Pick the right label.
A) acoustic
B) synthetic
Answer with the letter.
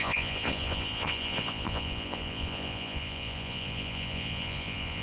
B